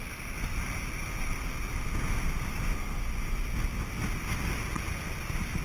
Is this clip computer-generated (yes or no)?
no